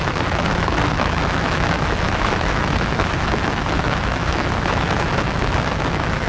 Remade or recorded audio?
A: remade